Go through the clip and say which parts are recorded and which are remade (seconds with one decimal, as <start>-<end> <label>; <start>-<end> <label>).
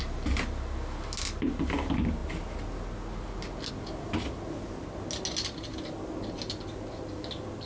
0.0-7.7 recorded